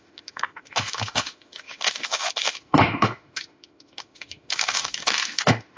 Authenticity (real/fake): fake